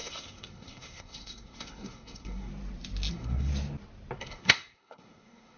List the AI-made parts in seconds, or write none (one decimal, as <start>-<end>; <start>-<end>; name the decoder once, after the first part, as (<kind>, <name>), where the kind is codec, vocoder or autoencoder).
0.0-2.5 (codec, SNAC); 3.1-3.5; 4.2-5.6